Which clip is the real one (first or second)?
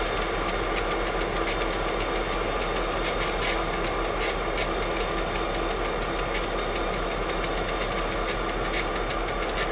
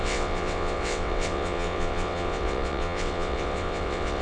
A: first